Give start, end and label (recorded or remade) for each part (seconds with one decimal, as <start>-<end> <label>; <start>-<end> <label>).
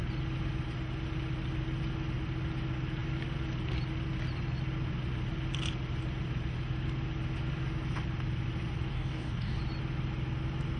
0.0-8.9 recorded; 8.9-9.6 remade; 9.6-10.8 recorded